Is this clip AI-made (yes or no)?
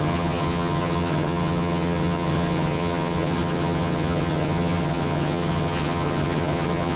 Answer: yes